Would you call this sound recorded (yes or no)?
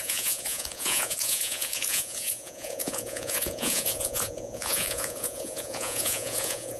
no